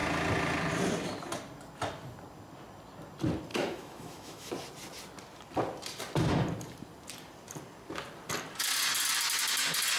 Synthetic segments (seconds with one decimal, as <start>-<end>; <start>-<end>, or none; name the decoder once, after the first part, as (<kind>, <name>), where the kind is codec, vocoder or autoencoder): 3.5-4.5 (autoencoder, DAC-VAE)